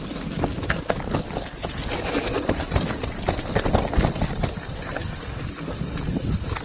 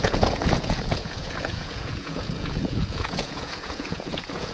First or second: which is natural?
first